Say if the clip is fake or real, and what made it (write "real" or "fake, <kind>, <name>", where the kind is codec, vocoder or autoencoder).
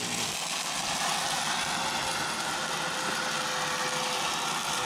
real